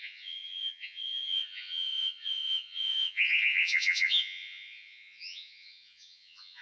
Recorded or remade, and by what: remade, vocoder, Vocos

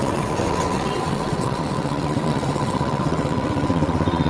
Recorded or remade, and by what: remade, vocoder, WaveNeXt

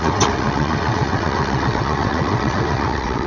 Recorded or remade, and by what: remade, vocoder, WaveNeXt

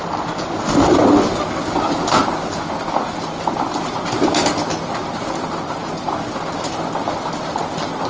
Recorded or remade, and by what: recorded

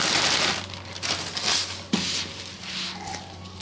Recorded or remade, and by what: recorded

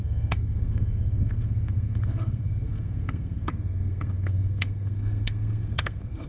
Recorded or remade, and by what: remade, codec, SNAC